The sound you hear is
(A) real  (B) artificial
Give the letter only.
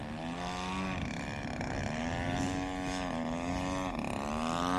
A